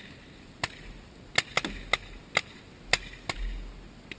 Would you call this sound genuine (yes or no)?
yes